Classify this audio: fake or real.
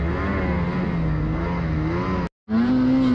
real